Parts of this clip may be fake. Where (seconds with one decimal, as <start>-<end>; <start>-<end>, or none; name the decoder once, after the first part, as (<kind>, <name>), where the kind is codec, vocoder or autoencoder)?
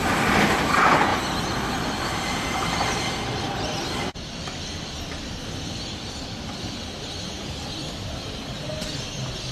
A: none